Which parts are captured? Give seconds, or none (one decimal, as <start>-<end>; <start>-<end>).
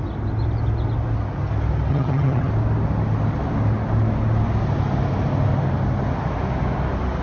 0.0-1.9; 2.5-7.2